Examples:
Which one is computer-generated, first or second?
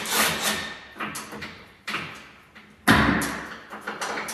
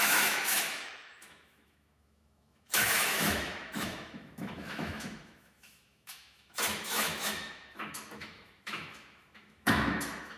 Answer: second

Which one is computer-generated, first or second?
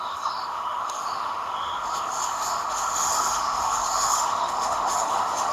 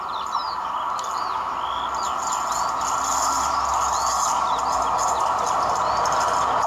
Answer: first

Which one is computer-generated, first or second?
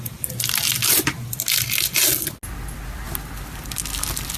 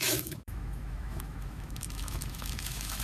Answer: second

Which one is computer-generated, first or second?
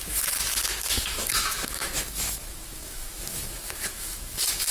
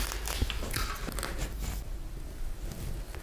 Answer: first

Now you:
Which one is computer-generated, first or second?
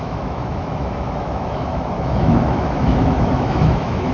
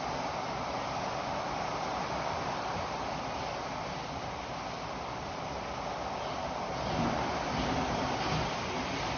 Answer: first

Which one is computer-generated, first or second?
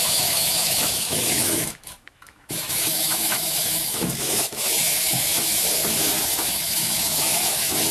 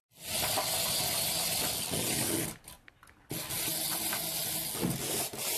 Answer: first